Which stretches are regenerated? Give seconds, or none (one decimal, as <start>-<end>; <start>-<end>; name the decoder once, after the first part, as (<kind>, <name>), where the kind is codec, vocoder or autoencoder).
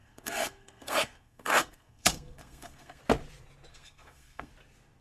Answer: 0.0-3.0 (codec, SNAC); 3.7-4.5